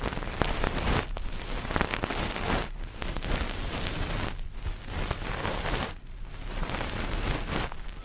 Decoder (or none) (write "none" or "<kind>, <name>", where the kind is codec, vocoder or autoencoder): none